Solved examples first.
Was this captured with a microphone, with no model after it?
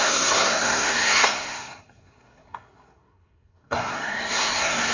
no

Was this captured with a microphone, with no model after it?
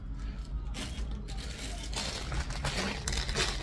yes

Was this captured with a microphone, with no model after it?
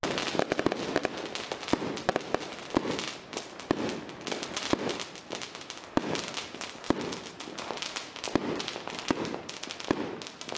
yes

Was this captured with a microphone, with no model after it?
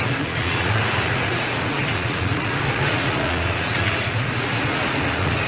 no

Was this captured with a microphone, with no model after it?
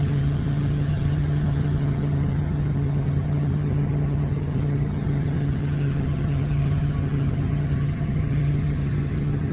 no